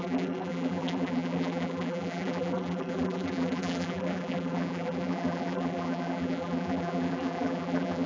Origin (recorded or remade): remade